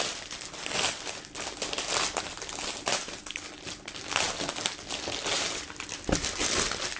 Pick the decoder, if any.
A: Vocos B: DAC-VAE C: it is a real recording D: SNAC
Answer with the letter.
C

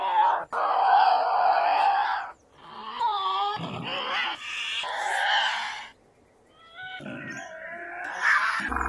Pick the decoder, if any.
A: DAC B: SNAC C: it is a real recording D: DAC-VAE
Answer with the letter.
C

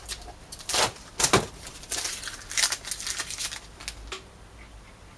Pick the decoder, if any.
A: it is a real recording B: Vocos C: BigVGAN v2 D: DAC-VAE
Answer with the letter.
A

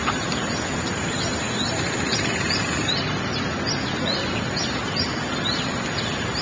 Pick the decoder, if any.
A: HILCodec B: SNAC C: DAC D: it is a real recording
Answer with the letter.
D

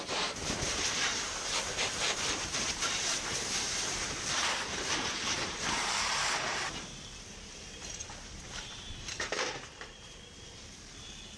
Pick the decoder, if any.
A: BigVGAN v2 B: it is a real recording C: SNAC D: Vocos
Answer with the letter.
A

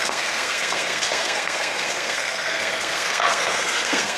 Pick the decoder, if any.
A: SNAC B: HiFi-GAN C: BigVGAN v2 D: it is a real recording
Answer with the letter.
A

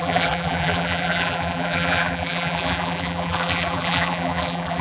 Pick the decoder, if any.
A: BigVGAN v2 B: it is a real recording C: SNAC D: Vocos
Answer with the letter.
A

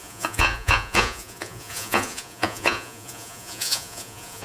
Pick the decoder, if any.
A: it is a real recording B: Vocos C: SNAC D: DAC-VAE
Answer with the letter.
B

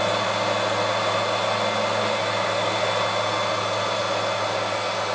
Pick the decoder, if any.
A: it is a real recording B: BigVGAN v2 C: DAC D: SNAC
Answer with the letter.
A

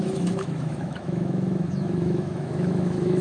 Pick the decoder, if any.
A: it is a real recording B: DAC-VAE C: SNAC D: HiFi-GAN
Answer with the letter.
B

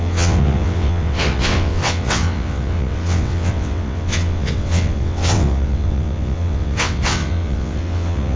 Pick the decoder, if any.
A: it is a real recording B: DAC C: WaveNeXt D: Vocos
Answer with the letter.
C